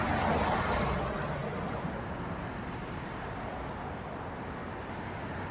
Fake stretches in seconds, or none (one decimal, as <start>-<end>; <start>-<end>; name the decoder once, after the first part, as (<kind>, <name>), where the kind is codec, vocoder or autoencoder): none